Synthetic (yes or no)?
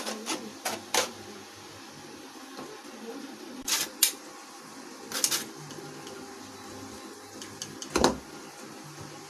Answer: no